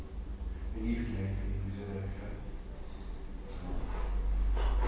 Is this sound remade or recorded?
recorded